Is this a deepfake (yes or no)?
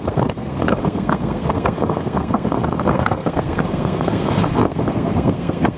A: yes